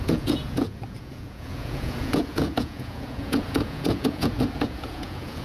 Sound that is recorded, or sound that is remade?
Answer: remade